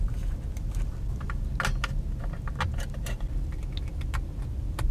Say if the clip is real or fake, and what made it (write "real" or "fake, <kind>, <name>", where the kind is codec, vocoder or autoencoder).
real